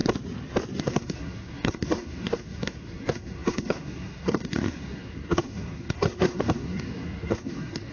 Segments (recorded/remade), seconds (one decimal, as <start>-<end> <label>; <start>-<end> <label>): 0.0-0.8 recorded; 0.8-7.9 remade